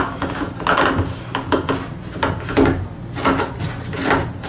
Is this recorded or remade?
recorded